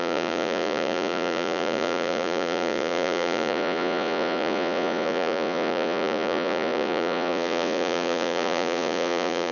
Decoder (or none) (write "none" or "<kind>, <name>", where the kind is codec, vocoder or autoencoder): vocoder, Vocos